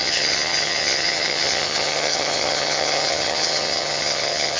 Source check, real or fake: fake